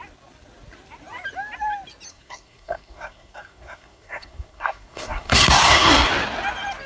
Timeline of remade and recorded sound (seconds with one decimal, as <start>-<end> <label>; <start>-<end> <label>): 0.0-2.1 recorded; 2.1-6.1 remade; 6.1-6.9 recorded